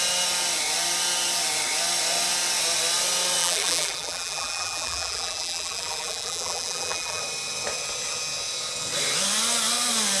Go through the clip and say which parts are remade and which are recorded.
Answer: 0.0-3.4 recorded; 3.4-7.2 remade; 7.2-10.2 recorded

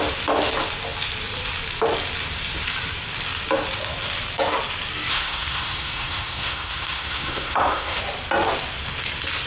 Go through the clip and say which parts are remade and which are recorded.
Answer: 0.0-5.1 recorded; 5.1-8.0 remade; 8.0-9.5 recorded